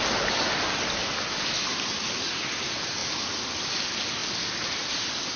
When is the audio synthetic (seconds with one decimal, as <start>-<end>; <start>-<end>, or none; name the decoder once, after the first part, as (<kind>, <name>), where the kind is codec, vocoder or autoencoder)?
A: 0.0-3.0 (vocoder, BigVGAN v2); 3.8-4.2